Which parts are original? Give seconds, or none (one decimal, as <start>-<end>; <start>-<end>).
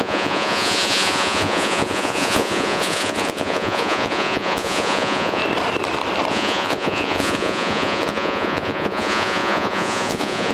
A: 5.4-6.3